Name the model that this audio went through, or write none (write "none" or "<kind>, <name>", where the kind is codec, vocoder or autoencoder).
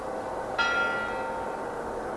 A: none